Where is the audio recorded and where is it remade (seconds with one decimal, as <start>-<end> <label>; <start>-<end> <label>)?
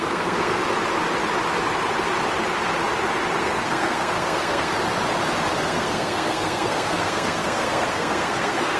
0.0-0.6 remade; 0.6-3.4 recorded; 3.4-4.7 remade; 4.7-5.6 recorded; 5.6-8.8 remade